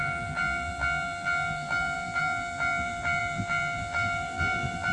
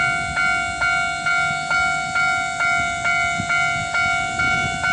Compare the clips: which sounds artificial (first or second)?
first